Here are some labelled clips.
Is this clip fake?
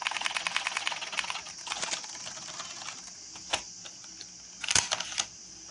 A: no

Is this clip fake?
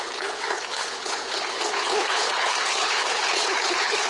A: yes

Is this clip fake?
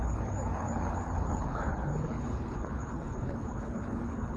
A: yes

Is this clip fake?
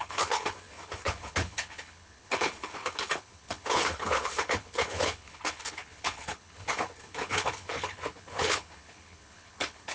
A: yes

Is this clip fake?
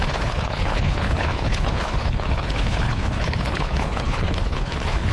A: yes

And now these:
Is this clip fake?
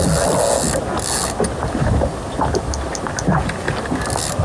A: no